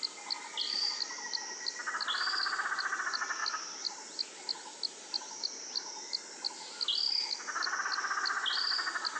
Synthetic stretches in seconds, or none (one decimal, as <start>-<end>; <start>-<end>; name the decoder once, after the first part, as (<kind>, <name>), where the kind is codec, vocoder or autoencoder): none